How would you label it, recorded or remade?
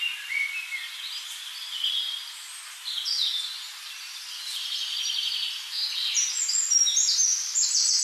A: recorded